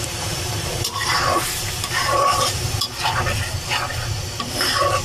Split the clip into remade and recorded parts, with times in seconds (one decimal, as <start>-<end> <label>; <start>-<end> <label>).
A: 0.0-1.1 remade; 1.1-4.1 recorded; 4.1-5.0 remade